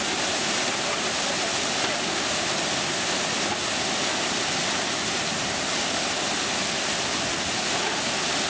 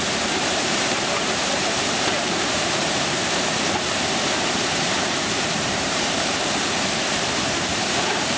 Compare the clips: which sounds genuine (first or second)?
first